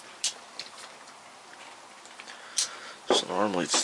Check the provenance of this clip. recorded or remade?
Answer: recorded